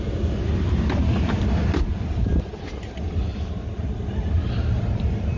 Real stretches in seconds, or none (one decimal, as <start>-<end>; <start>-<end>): 0.0-1.1; 2.7-5.4